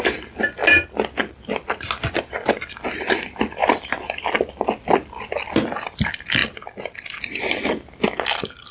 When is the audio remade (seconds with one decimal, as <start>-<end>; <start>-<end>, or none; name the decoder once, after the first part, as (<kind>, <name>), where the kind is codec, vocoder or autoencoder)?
3.6-5.2 (vocoder, BigVGAN v2); 6.4-7.2